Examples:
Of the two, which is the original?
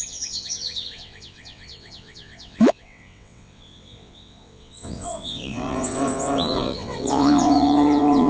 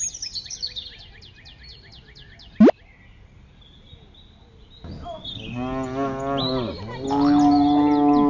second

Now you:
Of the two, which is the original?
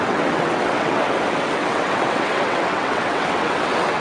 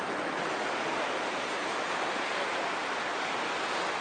second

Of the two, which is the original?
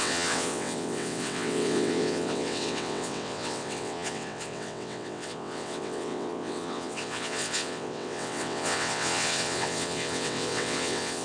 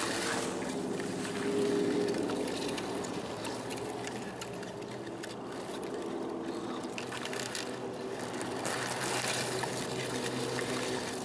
second